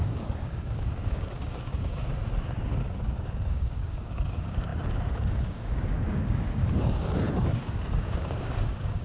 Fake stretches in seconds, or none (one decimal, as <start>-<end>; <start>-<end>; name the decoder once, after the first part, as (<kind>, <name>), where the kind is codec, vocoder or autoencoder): 0.0-9.0 (codec, DAC)